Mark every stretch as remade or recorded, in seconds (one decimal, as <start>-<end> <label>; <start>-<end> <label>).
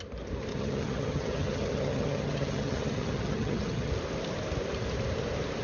0.0-0.5 recorded; 0.5-3.9 remade; 3.9-5.6 recorded